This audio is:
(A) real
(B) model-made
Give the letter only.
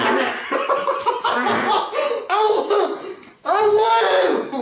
B